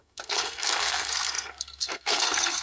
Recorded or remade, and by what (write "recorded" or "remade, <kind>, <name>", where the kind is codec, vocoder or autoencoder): remade, codec, SNAC